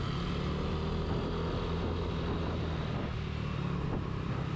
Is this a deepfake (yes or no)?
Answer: no